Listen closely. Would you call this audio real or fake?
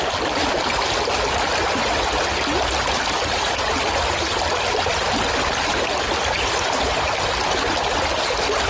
real